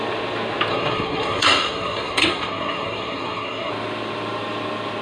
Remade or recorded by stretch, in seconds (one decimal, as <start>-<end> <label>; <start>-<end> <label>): 0.0-0.7 recorded; 0.7-3.7 remade; 3.7-5.0 recorded